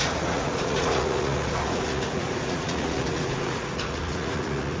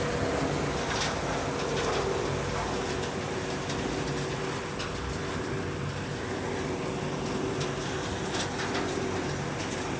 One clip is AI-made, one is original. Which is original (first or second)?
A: second